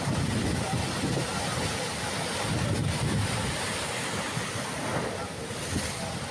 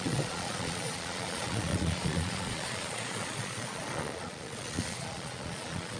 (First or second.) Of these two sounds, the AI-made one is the second